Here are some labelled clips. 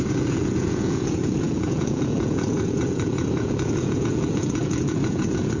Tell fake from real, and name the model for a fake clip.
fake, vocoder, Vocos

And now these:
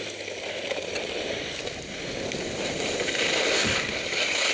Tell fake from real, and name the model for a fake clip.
real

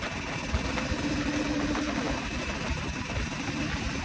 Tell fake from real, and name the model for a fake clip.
fake, vocoder, BigVGAN v2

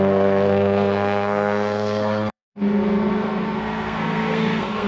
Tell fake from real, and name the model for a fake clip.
fake, codec, SNAC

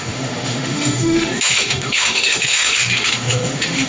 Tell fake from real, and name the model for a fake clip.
fake, autoencoder, DAC-VAE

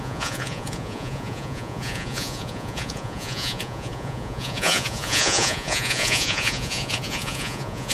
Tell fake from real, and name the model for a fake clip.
fake, vocoder, Vocos